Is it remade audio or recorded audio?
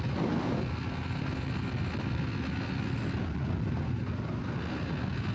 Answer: recorded